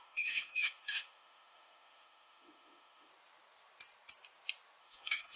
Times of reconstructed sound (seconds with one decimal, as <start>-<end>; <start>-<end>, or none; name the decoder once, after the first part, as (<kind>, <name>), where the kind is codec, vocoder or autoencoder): 0.0-3.1 (autoencoder, DAC-VAE); 4.8-5.4